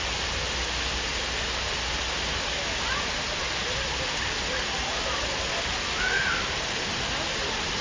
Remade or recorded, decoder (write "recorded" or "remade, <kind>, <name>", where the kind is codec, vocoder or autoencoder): recorded